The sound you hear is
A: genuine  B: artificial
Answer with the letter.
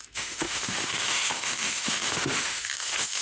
B